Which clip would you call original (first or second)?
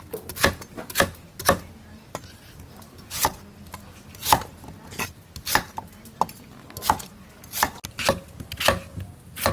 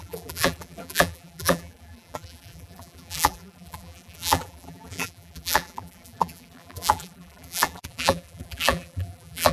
first